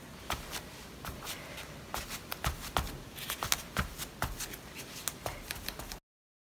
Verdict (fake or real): real